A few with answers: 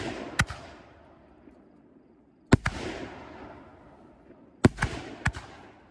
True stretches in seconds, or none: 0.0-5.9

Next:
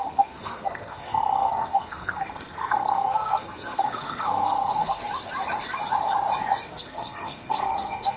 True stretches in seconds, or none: 5.0-6.7

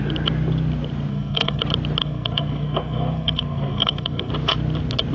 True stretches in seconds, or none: 0.0-1.1; 1.6-2.0; 4.3-5.1

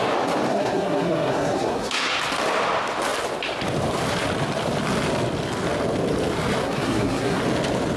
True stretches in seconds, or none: 0.0-0.5; 2.1-6.6; 7.4-8.0

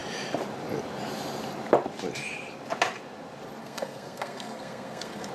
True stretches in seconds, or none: 0.0-3.6